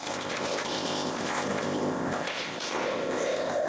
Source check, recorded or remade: remade